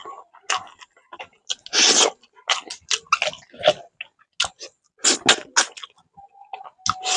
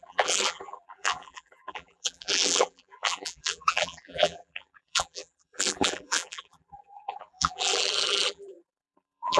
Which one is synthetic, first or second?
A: second